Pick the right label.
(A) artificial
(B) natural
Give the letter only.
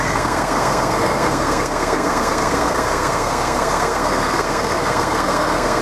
A